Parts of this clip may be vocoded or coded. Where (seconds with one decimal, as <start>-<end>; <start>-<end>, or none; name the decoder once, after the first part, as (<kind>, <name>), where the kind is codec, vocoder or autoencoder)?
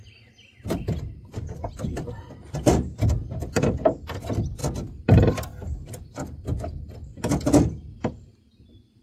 none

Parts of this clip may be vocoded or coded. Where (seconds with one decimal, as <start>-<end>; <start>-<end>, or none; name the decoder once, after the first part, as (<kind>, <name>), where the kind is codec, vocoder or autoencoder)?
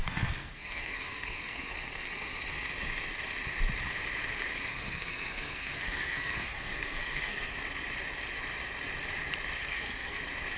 0.0-2.1 (codec, SNAC); 4.7-7.5; 9.6-10.2